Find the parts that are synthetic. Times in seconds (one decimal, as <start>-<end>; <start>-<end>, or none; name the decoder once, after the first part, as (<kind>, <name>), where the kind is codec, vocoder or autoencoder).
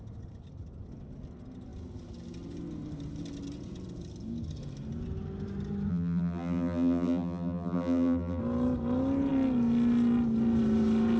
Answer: 5.9-8.4 (vocoder, BigVGAN v2)